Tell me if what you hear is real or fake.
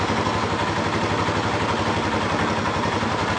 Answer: real